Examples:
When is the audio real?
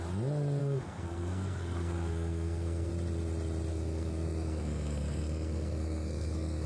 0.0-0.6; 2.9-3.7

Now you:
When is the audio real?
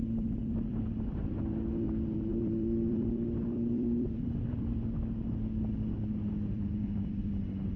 1.3-2.3; 4.6-6.5; 7.3-7.8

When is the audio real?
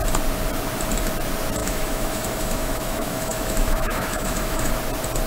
0.0-1.6; 4.7-5.3